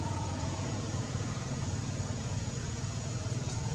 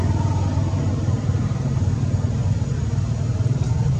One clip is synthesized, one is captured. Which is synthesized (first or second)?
first